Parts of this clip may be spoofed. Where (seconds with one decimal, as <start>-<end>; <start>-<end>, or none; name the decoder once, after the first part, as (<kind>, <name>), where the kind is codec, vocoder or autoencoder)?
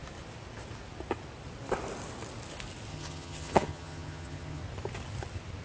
2.9-4.6 (vocoder, HiFi-GAN)